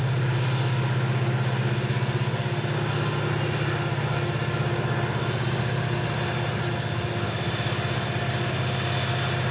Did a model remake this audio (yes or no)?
no